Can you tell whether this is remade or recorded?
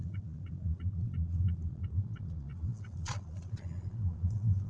remade